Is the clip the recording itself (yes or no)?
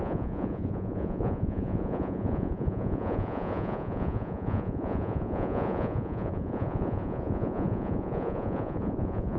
no